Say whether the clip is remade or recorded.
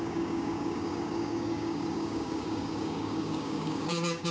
remade